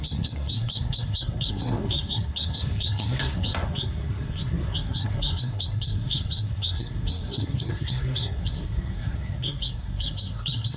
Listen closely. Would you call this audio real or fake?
fake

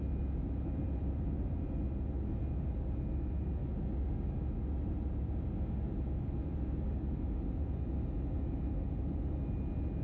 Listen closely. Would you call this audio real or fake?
real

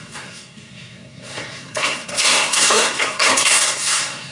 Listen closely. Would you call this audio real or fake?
fake